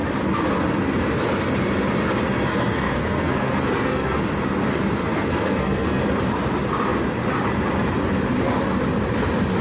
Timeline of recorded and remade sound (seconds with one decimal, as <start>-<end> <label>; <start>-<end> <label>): 0.0-2.5 recorded; 2.5-4.2 remade; 4.2-5.0 recorded; 5.0-6.0 remade; 6.0-9.6 recorded